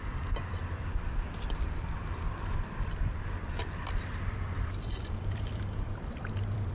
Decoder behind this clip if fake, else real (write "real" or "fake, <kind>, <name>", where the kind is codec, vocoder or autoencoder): fake, vocoder, BigVGAN v2